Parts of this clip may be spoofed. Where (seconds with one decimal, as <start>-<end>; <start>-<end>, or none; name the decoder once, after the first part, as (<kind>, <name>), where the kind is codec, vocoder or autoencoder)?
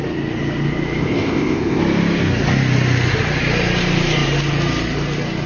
1.0-1.8 (codec, ZipCodec)